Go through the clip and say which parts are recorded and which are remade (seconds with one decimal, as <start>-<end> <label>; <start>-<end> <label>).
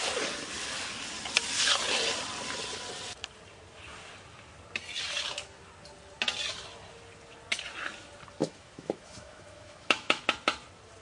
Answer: 0.0-8.4 recorded; 8.4-10.2 remade; 10.2-11.0 recorded